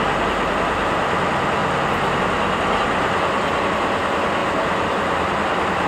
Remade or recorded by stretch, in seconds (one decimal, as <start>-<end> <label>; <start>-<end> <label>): 0.0-5.9 recorded